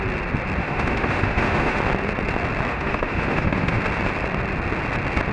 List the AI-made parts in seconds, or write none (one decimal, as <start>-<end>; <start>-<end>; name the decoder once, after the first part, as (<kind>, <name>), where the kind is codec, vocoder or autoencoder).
0.6-1.8 (autoencoder, DAC-VAE); 2.7-3.8